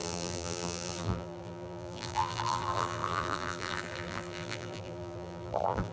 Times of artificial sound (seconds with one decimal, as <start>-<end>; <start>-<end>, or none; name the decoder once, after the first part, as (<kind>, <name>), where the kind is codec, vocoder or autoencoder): 0.0-5.9 (vocoder, BigVGAN v2)